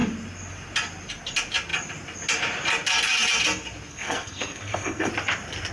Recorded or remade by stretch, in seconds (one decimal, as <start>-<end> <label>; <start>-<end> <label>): 0.0-3.9 recorded; 3.9-5.1 remade; 5.1-5.7 recorded